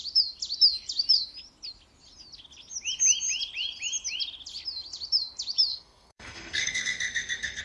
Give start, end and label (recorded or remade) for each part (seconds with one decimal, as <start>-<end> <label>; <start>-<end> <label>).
0.0-5.7 recorded; 5.7-7.6 remade

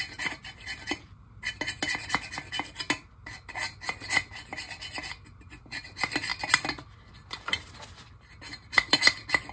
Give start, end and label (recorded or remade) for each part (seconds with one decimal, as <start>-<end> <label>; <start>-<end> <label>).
0.0-9.5 recorded

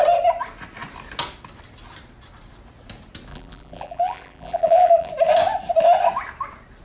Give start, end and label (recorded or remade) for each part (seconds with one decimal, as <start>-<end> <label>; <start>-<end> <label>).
0.0-3.3 recorded; 3.3-5.1 remade; 5.1-6.8 recorded

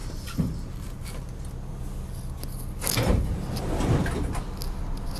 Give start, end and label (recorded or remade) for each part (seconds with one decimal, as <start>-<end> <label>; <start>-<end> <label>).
0.0-1.2 remade; 1.2-5.2 recorded

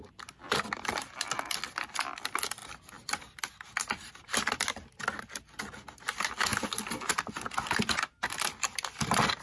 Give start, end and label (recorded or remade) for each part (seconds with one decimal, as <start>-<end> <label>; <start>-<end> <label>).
0.0-9.4 recorded

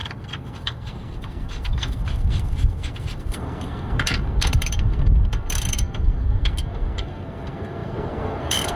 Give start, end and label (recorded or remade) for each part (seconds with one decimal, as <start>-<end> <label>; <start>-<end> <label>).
0.0-8.8 remade